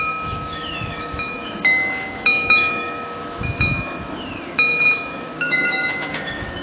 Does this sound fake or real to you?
fake